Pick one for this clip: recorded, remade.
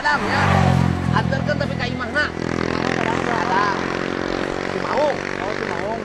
recorded